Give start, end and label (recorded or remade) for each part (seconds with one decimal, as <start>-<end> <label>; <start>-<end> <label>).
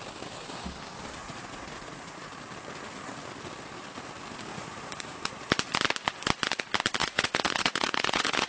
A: 0.0-1.2 recorded; 1.2-2.3 remade; 2.3-4.5 recorded; 4.5-5.4 remade; 5.4-7.0 recorded; 7.0-8.5 remade